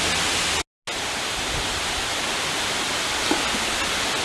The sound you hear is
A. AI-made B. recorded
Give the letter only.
B